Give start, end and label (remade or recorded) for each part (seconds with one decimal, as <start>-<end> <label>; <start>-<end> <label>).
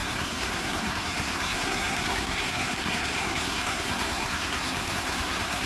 0.0-5.7 remade